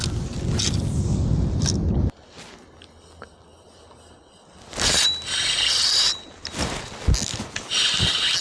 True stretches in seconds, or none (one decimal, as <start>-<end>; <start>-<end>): 0.0-8.4